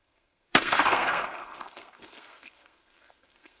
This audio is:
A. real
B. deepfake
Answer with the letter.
B